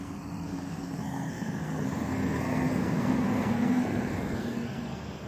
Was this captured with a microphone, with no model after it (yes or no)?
no